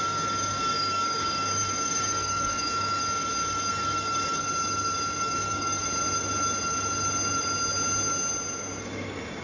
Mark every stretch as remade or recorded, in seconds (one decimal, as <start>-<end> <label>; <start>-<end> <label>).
0.0-3.0 remade; 3.0-3.7 recorded; 3.7-4.4 remade; 4.4-5.2 recorded; 5.2-5.8 remade; 5.8-8.8 recorded; 8.8-9.4 remade